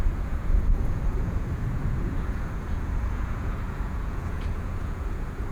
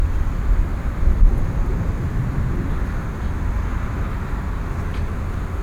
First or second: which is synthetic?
first